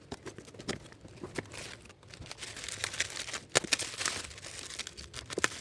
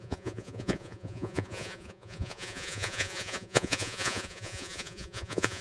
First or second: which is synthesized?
second